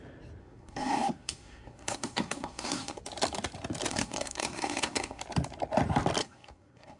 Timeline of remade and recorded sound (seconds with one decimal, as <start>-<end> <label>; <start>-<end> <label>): 0.0-0.4 recorded; 0.4-3.0 remade; 3.0-3.9 recorded; 3.9-5.2 remade; 5.2-6.2 recorded; 6.2-7.0 remade